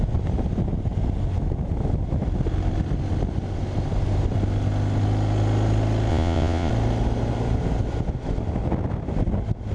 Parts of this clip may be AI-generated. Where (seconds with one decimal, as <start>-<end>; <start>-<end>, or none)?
6.1-6.7